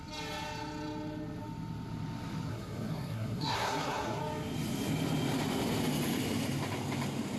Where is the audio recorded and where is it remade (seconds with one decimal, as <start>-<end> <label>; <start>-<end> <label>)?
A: 0.0-2.5 recorded; 2.5-4.2 remade; 4.2-7.4 recorded

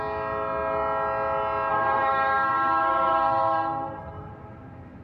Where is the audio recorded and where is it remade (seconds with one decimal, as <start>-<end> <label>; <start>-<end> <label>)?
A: 0.0-1.7 recorded; 1.7-4.3 remade; 4.3-5.0 recorded

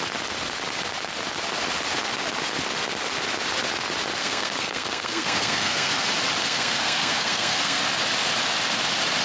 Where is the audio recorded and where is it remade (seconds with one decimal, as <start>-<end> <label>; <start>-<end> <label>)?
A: 0.0-4.2 recorded; 4.2-5.9 remade; 5.9-6.4 recorded; 6.4-7.8 remade; 7.8-9.2 recorded

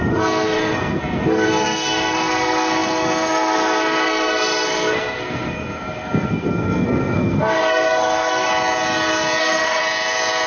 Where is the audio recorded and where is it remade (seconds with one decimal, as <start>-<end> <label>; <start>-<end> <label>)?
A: 0.0-8.5 remade; 8.5-9.4 recorded; 9.4-9.8 remade; 9.8-10.5 recorded

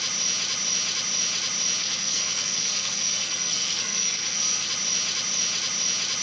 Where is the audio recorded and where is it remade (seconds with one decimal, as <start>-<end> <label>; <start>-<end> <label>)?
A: 0.0-1.8 recorded; 1.8-4.7 remade; 4.7-6.2 recorded

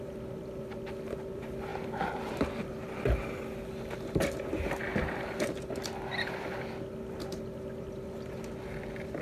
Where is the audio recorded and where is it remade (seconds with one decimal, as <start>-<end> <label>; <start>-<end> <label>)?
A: 0.0-9.2 recorded